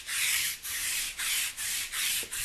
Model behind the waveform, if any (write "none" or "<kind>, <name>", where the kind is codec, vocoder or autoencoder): vocoder, BigVGAN v2